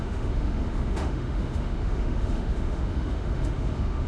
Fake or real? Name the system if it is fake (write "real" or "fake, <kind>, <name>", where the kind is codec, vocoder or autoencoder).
fake, autoencoder, DAC-VAE